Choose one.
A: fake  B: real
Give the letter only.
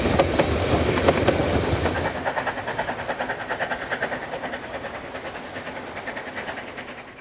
B